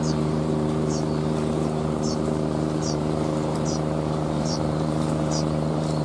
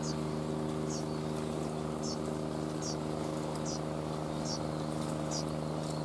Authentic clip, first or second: second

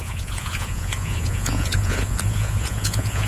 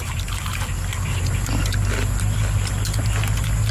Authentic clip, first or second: second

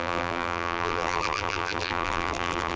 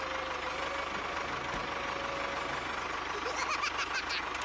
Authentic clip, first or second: second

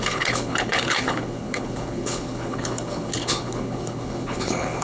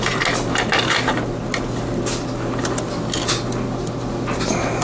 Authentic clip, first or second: second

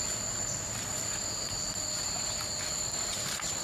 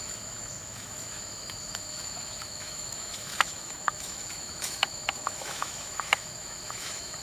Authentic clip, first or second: first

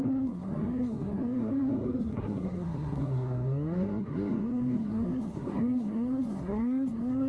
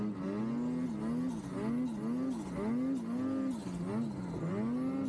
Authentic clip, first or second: second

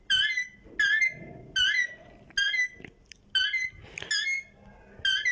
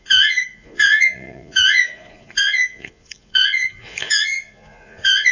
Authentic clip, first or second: first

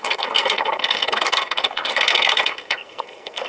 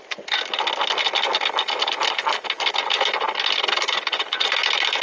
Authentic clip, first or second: second